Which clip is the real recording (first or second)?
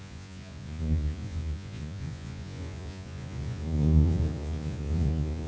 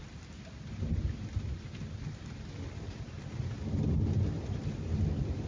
second